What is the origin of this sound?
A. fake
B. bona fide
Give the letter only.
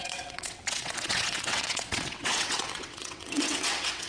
A